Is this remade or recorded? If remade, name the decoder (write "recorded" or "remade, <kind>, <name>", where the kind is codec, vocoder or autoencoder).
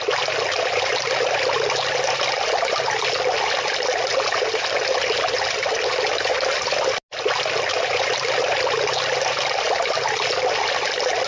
recorded